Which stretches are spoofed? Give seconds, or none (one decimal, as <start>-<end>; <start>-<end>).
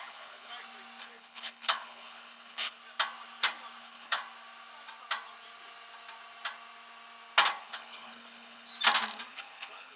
0.0-0.5; 1.0-2.8; 3.8-4.2; 7.6-8.7; 9.3-10.0